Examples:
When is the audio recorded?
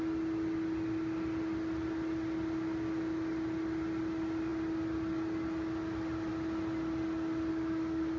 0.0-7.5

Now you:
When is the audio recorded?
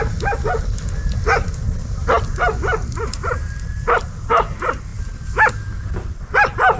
0.0-6.8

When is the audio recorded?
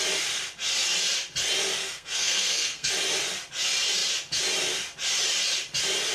0.0-1.8; 2.9-6.1